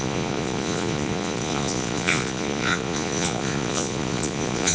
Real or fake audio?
fake